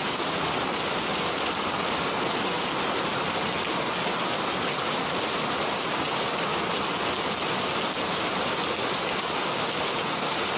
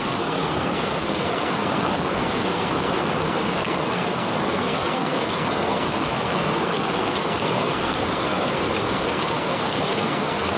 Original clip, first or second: first